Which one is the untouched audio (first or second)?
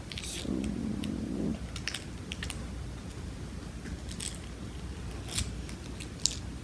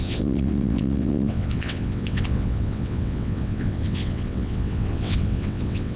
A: first